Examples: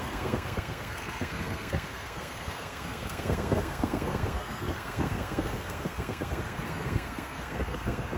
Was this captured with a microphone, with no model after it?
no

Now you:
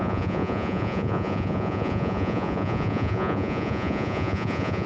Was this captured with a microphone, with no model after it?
no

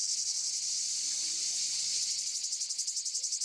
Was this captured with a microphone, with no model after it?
no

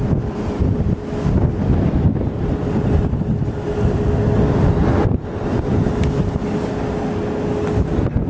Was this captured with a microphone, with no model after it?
yes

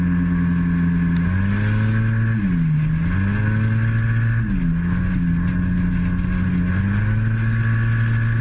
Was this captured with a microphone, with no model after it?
yes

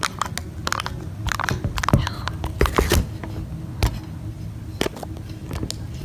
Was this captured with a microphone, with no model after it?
yes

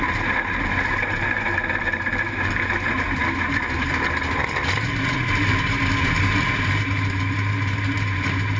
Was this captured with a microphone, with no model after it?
no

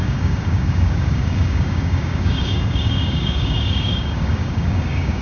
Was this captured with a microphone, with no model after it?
no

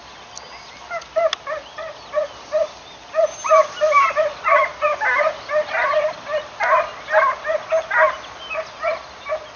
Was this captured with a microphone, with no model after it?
yes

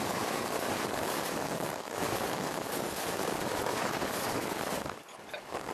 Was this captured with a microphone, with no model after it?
no